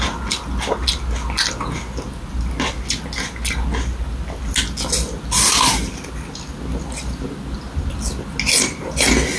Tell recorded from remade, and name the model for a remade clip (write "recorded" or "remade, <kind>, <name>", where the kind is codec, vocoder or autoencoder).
recorded